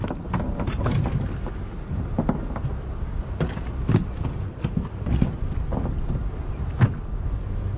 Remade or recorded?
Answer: recorded